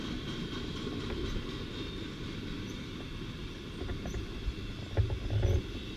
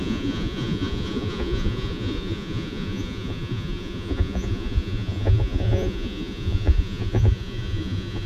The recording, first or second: first